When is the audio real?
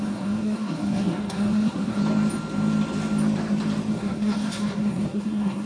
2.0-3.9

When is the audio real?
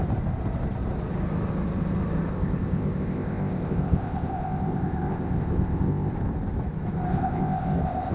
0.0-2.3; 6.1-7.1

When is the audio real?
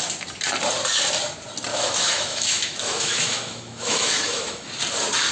0.0-1.7; 4.7-5.3